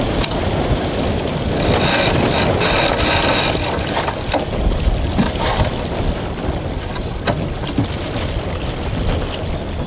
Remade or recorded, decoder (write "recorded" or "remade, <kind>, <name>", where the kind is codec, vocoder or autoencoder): recorded